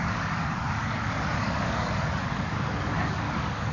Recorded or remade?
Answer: remade